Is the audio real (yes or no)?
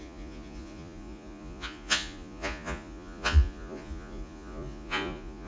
no